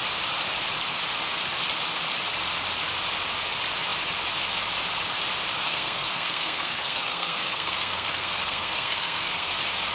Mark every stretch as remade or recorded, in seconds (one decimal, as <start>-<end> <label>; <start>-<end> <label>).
0.0-5.6 recorded; 5.6-9.5 remade; 9.5-9.9 recorded